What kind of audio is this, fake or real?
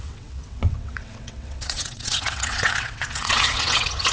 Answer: fake